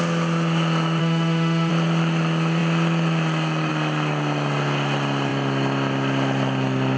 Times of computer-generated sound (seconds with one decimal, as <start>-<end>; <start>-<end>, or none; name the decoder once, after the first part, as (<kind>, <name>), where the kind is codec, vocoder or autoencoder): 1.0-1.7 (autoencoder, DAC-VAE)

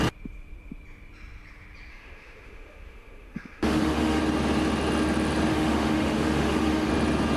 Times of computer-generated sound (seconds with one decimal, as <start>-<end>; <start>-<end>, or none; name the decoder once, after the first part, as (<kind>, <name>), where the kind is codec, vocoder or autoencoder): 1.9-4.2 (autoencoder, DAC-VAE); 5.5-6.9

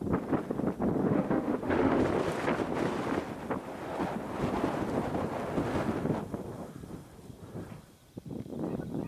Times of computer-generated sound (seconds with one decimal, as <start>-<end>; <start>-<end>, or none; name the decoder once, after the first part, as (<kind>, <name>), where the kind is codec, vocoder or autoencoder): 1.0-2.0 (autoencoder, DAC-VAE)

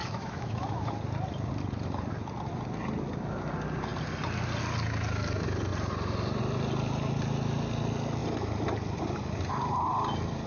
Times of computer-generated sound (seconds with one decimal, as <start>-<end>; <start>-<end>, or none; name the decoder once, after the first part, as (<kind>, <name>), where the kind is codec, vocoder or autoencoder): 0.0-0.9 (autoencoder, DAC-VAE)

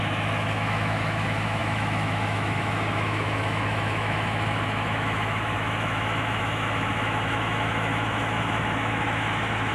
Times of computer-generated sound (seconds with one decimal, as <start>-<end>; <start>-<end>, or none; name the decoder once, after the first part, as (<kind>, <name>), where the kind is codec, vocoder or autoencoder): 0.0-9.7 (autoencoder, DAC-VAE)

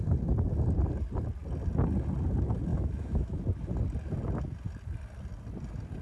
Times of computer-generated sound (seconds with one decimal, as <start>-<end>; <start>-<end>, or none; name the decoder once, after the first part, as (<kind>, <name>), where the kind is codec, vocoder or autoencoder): 2.7-3.4 (autoencoder, DAC-VAE)